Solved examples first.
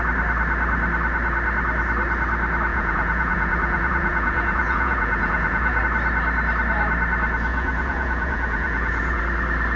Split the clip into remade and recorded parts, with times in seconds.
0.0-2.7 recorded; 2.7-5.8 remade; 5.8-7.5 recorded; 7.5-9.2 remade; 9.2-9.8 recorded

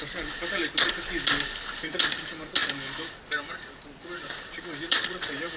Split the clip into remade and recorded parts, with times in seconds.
0.0-5.6 recorded

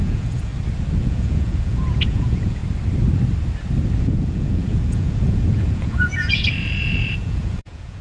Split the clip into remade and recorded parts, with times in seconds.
0.0-0.5 remade; 0.5-1.0 recorded; 1.0-2.6 remade; 2.6-4.0 recorded; 4.0-8.0 remade